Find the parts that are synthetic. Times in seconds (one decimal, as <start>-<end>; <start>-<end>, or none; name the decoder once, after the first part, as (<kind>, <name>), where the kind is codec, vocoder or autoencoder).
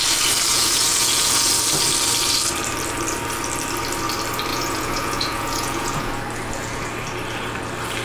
0.5-1.5 (vocoder, Vocos); 4.5-6.1